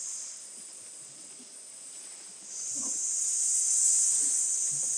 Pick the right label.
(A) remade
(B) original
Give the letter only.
A